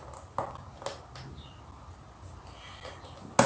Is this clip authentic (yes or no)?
yes